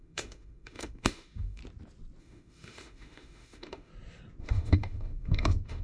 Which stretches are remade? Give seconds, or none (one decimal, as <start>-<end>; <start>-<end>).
0.0-1.6; 2.2-3.9; 4.4-5.8

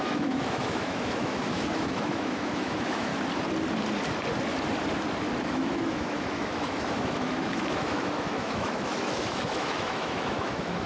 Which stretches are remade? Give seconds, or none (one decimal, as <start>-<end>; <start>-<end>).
0.0-3.1; 5.4-10.9

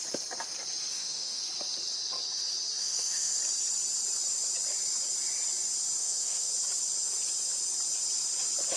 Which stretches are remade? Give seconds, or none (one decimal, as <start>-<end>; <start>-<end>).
0.9-1.4; 2.8-3.4; 6.0-6.5

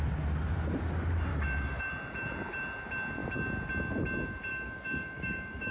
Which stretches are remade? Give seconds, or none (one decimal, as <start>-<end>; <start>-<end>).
1.3-1.8; 4.5-5.7

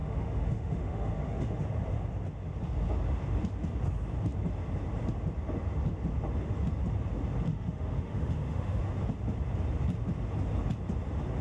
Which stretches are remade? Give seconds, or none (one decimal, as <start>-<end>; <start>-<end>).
0.0-1.6; 7.5-8.8

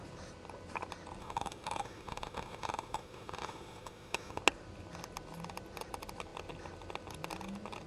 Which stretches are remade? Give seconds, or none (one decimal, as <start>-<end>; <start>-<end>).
1.2-4.4

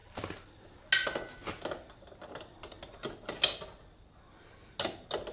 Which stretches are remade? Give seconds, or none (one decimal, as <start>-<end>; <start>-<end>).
none